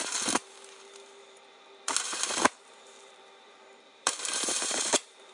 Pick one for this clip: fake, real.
fake